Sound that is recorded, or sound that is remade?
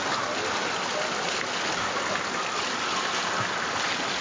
recorded